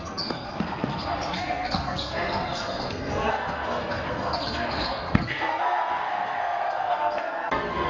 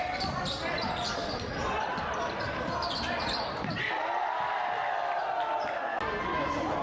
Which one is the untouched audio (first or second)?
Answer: second